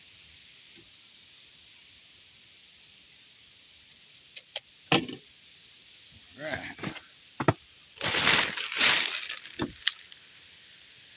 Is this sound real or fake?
fake